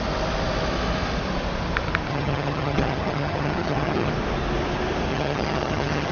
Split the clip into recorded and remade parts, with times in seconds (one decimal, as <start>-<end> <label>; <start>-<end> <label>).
0.0-2.1 recorded; 2.1-4.1 remade; 4.1-5.1 recorded; 5.1-6.1 remade